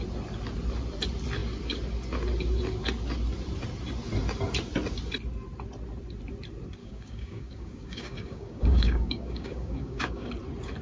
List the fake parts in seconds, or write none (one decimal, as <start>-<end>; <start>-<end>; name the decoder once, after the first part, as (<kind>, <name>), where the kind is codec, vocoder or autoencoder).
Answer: 6.8-10.3 (codec, DAC)